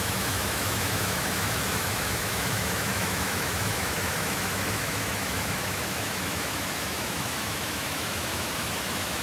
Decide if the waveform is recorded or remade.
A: remade